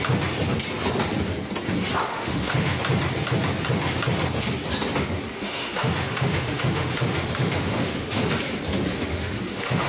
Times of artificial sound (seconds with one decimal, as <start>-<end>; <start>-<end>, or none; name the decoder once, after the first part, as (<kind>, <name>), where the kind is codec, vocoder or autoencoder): 2.1-2.8 (autoencoder, DAC-VAE); 5.3-8.2; 8.9-9.9